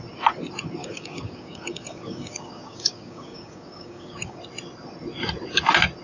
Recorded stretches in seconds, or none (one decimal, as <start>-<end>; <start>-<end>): 0.0-0.8; 4.4-6.0